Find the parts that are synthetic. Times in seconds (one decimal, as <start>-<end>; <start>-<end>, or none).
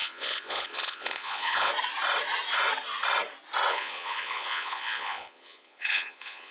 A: 0.0-1.7; 3.7-6.5